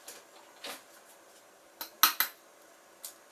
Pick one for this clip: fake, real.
real